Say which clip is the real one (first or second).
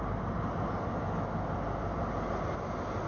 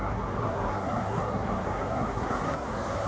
first